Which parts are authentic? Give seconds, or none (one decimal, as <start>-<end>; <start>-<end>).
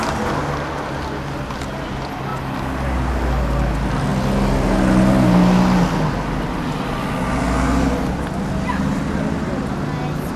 0.0-10.4